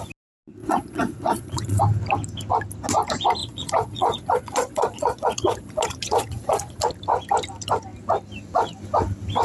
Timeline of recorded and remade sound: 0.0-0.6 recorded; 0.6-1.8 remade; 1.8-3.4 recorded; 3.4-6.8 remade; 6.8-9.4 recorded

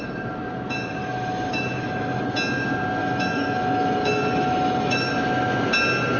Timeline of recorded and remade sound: 0.0-1.0 recorded; 1.0-2.2 remade; 2.2-3.0 recorded; 3.0-5.1 remade; 5.1-6.2 recorded

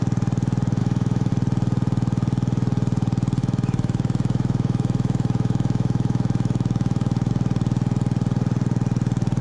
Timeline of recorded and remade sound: 0.0-0.8 recorded; 0.8-1.3 remade; 1.3-3.4 recorded; 3.4-7.3 remade; 7.3-9.4 recorded

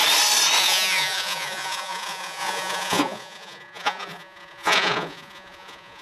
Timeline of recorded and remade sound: 0.0-0.6 recorded; 0.6-6.0 remade

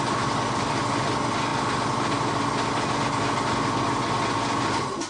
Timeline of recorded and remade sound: 0.0-5.1 recorded

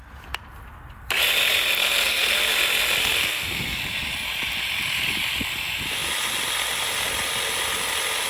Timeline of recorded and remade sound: 0.0-1.8 recorded; 1.8-2.5 remade; 2.5-3.0 recorded; 3.0-3.8 remade; 3.8-8.3 recorded